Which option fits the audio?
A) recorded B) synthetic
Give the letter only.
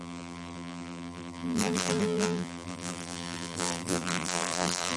B